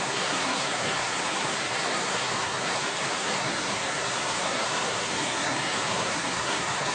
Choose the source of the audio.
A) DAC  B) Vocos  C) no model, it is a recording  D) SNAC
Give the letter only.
D